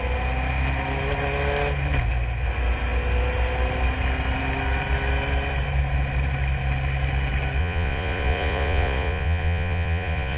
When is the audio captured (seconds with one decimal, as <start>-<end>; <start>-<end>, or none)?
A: 0.0-7.6